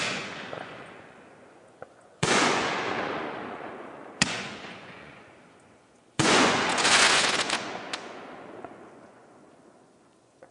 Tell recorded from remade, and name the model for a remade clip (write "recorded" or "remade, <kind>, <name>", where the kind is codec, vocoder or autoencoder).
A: remade, vocoder, Vocos